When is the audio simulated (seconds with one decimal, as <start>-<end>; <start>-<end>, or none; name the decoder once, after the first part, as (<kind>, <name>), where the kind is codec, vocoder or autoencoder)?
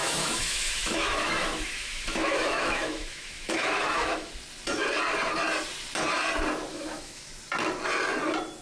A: 0.0-4.3 (autoencoder, DAC-VAE); 6.7-7.3